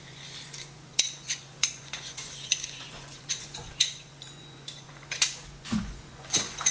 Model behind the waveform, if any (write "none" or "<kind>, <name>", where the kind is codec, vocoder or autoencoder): vocoder, Vocos